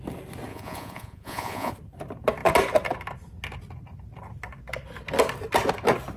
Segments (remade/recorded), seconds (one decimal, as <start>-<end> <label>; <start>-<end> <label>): 0.0-0.5 recorded; 0.5-1.7 remade; 1.7-6.2 recorded